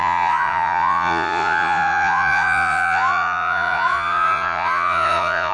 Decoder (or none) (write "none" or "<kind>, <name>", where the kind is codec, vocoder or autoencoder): vocoder, Vocos